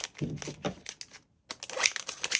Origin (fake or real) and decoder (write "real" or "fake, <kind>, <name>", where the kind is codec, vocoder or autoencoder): real